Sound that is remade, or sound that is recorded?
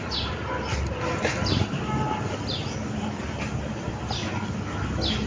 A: recorded